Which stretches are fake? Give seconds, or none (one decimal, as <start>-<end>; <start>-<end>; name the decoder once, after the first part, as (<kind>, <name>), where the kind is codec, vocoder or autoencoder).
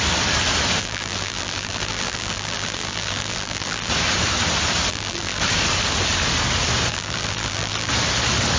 0.8-3.9 (vocoder, BigVGAN v2); 4.9-5.4; 6.9-7.9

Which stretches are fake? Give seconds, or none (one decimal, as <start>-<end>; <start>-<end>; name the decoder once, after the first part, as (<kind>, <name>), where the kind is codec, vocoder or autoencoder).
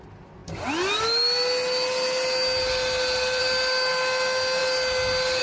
none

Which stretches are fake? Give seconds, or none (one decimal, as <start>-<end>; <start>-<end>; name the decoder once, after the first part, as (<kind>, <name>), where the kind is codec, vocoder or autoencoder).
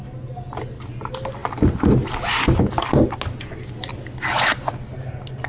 none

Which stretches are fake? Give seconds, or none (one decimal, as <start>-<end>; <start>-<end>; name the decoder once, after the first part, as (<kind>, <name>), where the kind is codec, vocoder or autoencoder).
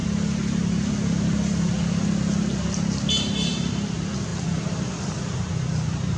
none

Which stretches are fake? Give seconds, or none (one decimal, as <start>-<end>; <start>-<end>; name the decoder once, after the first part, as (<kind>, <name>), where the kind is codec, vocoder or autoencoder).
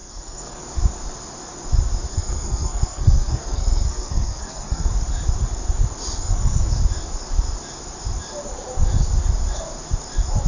0.0-0.6 (codec, SNAC); 2.1-4.9; 6.2-6.8